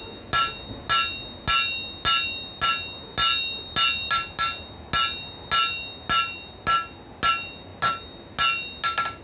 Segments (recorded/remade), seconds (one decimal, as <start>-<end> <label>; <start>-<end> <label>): 0.0-9.2 recorded